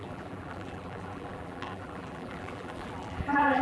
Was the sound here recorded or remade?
remade